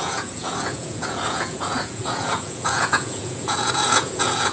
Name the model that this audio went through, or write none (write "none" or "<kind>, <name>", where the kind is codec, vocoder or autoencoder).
vocoder, Vocos